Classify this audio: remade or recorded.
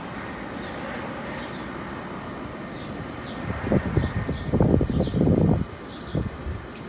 recorded